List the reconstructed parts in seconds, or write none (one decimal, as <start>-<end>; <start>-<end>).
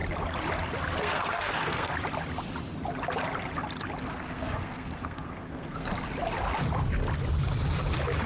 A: 1.0-1.9; 4.3-5.9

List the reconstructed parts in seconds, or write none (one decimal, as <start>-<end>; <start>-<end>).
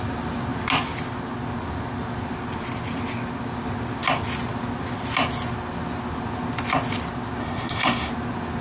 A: 7.4-8.1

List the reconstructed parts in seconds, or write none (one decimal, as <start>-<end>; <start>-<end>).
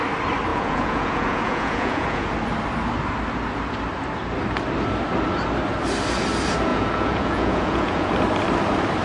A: 0.5-2.3; 6.7-8.1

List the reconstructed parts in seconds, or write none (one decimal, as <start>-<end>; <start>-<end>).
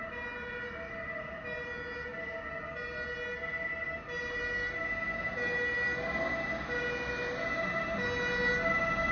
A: none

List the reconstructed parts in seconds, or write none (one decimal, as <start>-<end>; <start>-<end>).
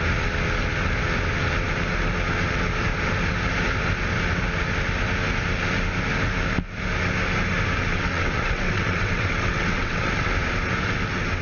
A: 7.8-10.3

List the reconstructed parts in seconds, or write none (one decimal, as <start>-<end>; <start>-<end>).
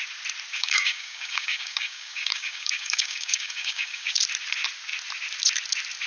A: 0.5-4.2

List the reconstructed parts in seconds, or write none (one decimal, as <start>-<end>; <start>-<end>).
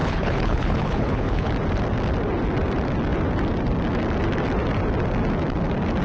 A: 0.0-1.5